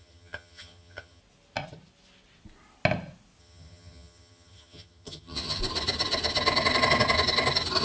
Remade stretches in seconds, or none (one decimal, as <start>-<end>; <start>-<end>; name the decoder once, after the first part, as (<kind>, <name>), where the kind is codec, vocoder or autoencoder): 0.0-1.2 (vocoder, HiFi-GAN); 3.4-5.6